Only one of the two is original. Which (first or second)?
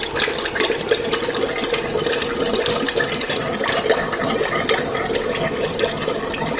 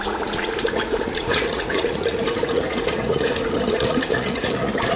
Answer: first